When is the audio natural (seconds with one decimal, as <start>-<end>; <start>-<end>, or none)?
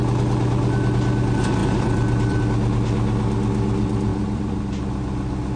0.0-1.6; 2.4-4.1; 4.8-5.6